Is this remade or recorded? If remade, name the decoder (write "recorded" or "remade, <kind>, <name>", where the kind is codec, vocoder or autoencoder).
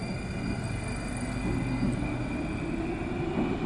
recorded